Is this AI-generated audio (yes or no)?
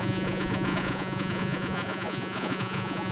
yes